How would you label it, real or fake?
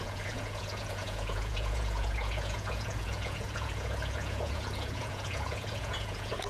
fake